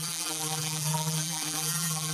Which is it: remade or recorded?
remade